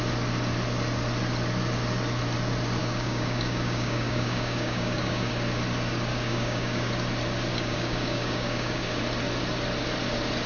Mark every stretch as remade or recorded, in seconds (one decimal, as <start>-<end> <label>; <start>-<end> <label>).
0.0-2.8 recorded; 2.8-5.3 remade; 5.3-6.1 recorded; 6.1-6.9 remade; 6.9-7.5 recorded; 7.5-9.0 remade; 9.0-10.5 recorded